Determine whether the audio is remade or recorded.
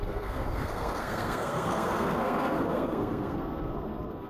remade